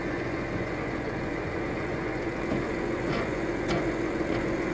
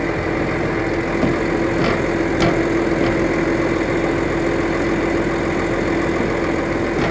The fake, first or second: first